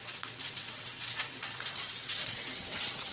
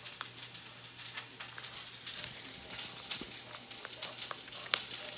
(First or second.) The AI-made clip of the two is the first